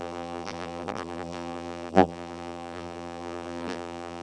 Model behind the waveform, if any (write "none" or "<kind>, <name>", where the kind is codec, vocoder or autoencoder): vocoder, BigVGAN v2